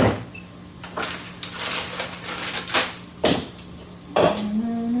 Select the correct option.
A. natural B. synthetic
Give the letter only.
A